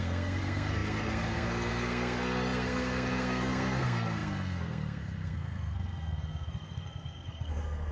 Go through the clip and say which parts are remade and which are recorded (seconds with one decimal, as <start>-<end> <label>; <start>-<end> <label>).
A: 0.0-7.9 remade